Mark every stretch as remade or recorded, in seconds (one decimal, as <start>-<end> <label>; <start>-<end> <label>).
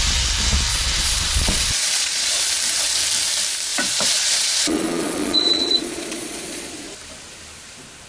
0.0-0.7 recorded; 0.7-2.4 remade; 2.4-3.7 recorded; 3.7-6.7 remade; 6.7-8.1 recorded